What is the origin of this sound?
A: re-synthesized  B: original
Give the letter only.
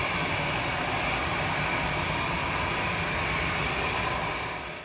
B